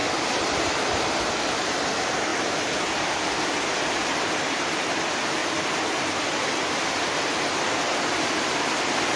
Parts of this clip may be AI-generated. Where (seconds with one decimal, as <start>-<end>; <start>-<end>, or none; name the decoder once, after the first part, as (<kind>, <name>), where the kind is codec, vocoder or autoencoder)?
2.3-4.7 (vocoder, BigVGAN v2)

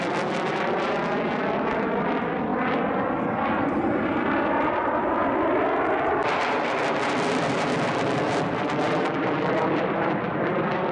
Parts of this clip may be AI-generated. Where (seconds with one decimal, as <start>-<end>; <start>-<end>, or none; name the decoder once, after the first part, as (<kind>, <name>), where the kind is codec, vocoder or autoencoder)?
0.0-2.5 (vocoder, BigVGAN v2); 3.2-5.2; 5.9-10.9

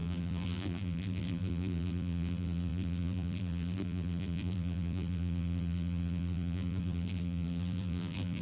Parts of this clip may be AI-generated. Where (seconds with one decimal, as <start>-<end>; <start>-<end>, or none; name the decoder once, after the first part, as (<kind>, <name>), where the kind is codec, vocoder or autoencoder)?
0.0-8.4 (vocoder, BigVGAN v2)